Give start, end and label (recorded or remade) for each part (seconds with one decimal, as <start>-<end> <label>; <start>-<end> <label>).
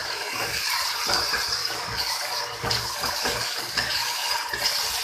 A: 0.0-0.6 remade; 0.6-1.6 recorded; 1.6-4.3 remade; 4.3-5.0 recorded